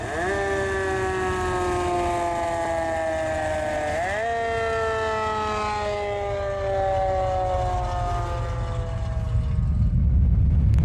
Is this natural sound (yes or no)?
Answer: yes